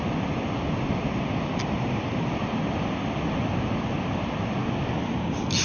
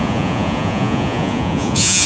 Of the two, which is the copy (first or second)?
second